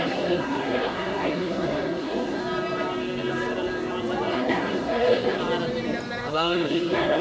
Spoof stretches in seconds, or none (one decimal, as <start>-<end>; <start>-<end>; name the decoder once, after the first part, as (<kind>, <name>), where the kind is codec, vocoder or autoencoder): 0.0-2.4 (codec, SNAC); 4.3-5.4; 6.3-7.2